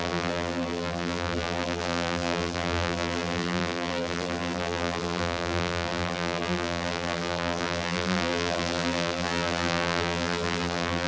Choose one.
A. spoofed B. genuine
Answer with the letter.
A